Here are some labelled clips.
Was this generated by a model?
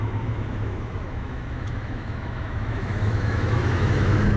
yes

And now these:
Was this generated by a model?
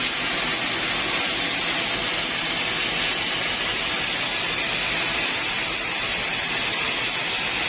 no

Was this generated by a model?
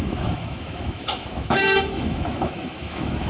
yes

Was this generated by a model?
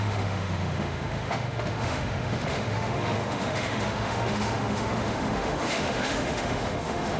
yes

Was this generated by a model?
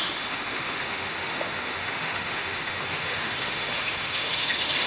yes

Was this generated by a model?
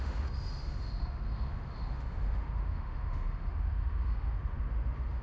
yes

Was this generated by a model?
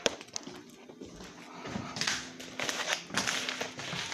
no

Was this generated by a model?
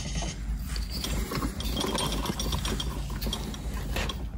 no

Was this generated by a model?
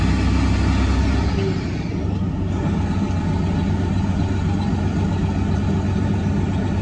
no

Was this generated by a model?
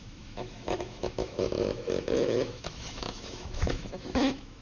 yes